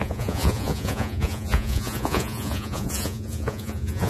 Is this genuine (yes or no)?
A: no